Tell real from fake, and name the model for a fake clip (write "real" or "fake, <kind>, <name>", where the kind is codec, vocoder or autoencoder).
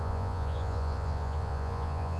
fake, vocoder, Vocos